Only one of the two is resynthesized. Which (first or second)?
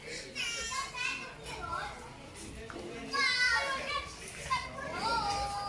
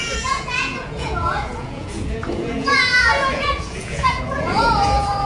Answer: second